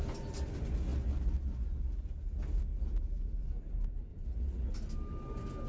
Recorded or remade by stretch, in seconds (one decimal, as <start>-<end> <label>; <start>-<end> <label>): 0.0-4.1 recorded; 4.1-4.7 remade; 4.7-5.7 recorded